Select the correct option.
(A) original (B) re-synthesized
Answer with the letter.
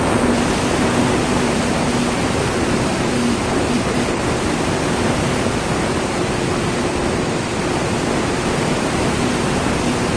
B